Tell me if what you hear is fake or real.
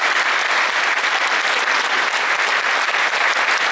real